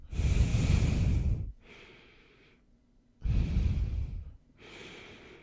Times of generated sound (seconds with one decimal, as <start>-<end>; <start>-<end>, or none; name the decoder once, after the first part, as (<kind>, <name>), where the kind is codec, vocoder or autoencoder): 0.0-5.4 (vocoder, BigVGAN v2)